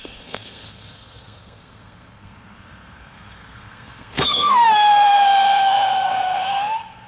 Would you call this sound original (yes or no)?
no